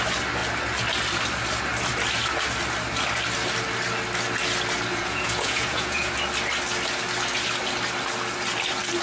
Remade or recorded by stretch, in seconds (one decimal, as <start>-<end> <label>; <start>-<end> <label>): 0.0-4.9 recorded; 4.9-6.1 remade; 6.1-9.0 recorded